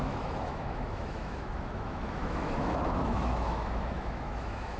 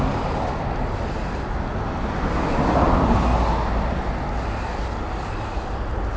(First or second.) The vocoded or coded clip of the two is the first